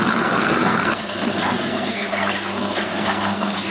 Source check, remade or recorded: remade